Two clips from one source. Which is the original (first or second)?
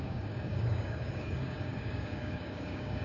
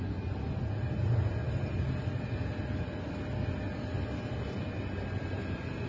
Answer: second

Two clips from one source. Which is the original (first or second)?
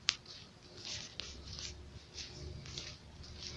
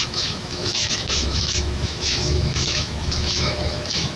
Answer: first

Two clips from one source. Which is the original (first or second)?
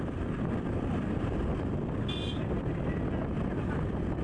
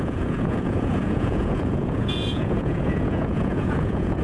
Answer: first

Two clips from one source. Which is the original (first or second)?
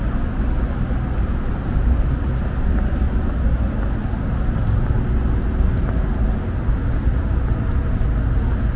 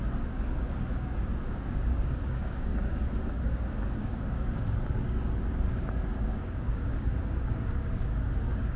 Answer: first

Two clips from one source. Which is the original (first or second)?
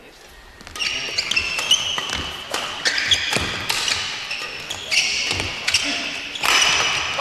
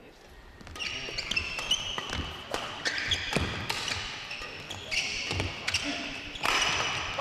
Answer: first